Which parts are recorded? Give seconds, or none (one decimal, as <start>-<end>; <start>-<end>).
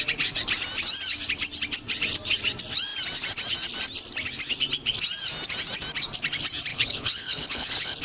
0.0-6.7